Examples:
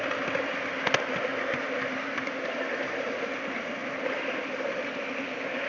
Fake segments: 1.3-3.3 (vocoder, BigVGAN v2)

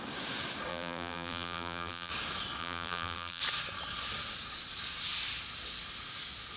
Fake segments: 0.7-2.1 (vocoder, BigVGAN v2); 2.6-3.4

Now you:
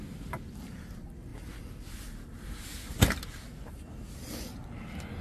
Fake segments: none

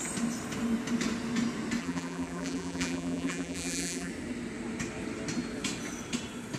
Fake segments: 1.8-4.1 (vocoder, BigVGAN v2)